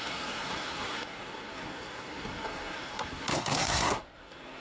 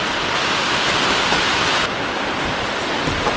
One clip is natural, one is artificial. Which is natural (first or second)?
second